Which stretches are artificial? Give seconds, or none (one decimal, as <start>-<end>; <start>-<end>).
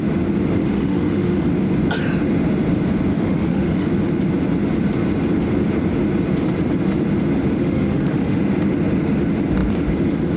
0.6-1.5; 3.1-3.9; 7.6-8.4